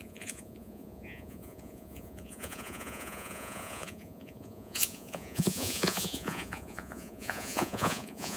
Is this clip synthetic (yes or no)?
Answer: yes